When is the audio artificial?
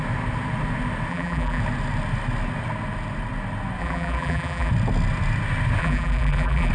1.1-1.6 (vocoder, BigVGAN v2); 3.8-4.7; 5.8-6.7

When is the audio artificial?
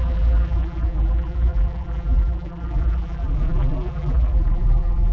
0.0-5.1 (vocoder, BigVGAN v2)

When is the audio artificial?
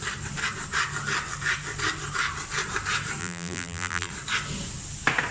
3.2-4.1 (vocoder, BigVGAN v2)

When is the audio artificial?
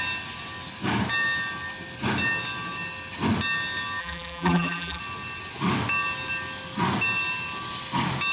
4.0-5.0 (vocoder, BigVGAN v2)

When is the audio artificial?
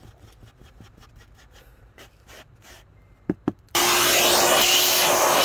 0.6-3.8 (vocoder, BigVGAN v2)